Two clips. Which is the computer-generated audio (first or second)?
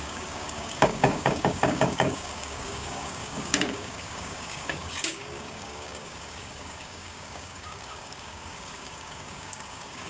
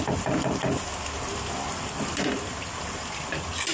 first